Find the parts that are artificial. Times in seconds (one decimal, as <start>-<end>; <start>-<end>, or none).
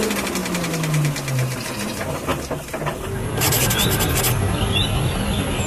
none